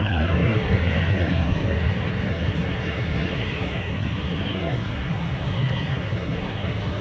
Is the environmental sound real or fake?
fake